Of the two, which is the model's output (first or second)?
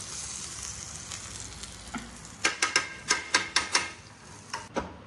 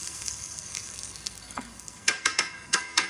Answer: second